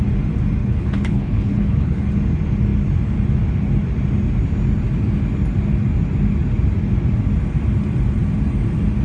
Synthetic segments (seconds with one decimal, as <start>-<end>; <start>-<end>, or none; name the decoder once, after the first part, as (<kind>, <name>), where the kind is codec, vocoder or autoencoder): 0.6-2.1 (codec, HILCodec)